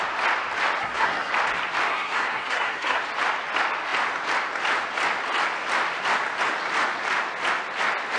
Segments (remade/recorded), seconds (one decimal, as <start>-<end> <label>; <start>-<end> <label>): 0.0-0.8 recorded; 0.8-1.3 remade; 1.3-1.9 recorded; 1.9-3.0 remade; 3.0-8.2 recorded